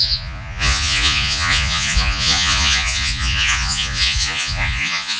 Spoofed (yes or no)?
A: yes